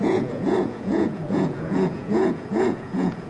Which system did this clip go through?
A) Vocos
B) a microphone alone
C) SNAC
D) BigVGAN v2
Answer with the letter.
A